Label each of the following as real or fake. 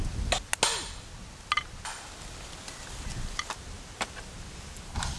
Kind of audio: real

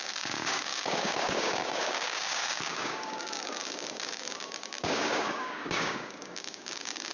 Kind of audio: fake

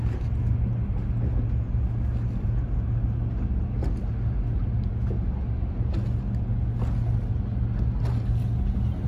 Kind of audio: real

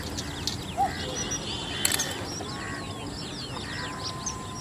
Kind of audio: real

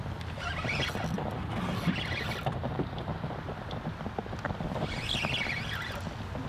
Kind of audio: real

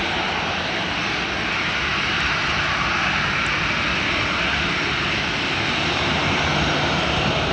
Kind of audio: real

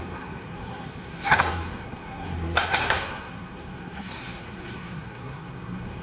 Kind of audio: fake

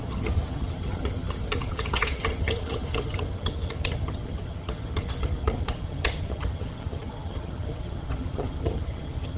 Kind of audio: fake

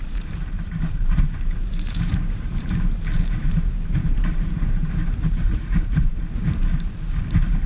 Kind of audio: fake